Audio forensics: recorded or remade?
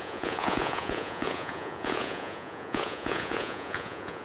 remade